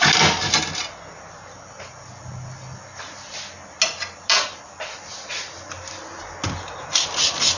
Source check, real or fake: real